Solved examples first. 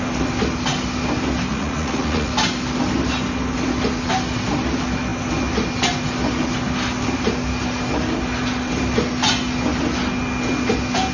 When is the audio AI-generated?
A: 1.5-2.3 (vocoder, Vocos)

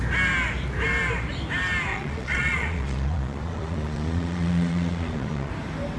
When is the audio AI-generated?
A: 1.9-5.5 (vocoder, Vocos)

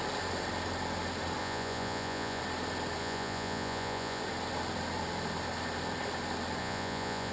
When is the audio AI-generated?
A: 1.4-2.4 (vocoder, Vocos); 3.0-4.2; 6.6-7.3

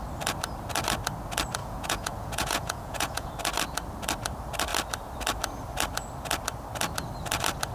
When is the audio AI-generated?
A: 1.6-3.3 (vocoder, Vocos)

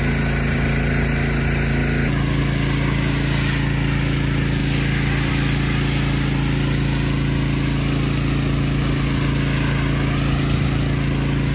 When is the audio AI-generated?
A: none